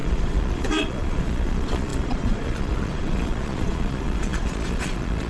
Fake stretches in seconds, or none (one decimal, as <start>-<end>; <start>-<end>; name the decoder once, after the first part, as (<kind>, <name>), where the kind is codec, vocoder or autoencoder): 0.0-5.3 (vocoder, Vocos)